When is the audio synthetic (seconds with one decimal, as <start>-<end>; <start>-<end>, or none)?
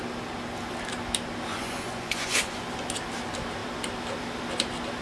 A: 1.5-2.6